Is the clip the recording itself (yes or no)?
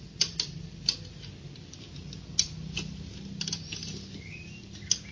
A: yes